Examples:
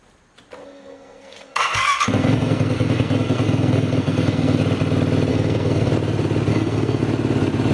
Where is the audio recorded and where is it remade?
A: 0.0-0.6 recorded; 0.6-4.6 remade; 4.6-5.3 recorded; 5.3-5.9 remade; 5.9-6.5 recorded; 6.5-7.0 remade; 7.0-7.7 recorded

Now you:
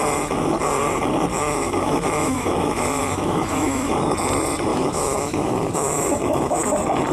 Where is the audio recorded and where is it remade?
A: 0.0-1.3 recorded; 1.3-3.9 remade; 3.9-4.7 recorded; 4.7-6.6 remade; 6.6-7.1 recorded